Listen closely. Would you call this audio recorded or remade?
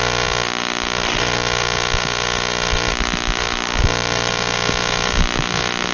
recorded